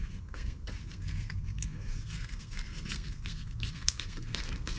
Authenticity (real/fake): fake